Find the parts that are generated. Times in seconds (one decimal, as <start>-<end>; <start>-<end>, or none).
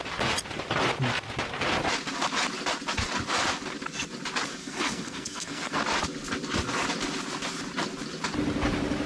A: 4.6-5.8